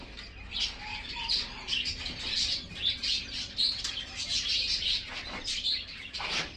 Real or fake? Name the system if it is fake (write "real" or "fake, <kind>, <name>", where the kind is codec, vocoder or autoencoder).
fake, vocoder, BigVGAN v2